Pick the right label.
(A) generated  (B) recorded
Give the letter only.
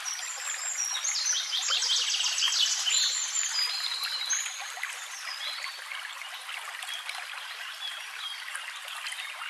B